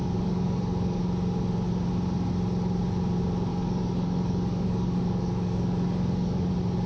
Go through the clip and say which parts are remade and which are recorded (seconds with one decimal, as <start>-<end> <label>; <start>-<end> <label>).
0.0-1.0 remade; 1.0-3.5 recorded; 3.5-6.5 remade; 6.5-6.9 recorded